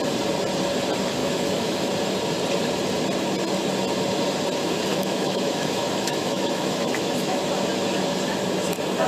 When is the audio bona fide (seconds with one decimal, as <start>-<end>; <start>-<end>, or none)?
0.0-1.2; 1.9-4.9; 7.5-9.1